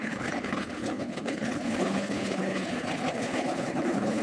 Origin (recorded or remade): remade